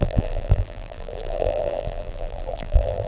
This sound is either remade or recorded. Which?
remade